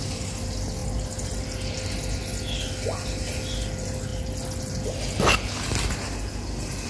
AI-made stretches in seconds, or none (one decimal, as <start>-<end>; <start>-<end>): none